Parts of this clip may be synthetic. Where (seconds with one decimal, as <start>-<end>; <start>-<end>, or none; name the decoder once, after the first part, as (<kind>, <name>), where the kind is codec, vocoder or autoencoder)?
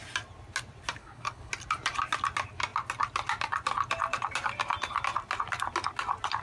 1.0-1.5 (codec, HILCodec)